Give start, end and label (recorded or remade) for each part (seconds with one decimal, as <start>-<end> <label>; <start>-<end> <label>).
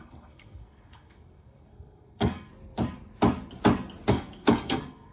0.0-2.5 remade; 2.5-4.1 recorded; 4.1-5.1 remade